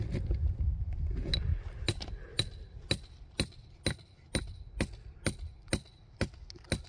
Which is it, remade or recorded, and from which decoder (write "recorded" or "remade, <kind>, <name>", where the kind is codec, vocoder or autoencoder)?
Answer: recorded